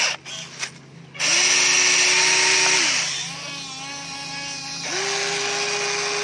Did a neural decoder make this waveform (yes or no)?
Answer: no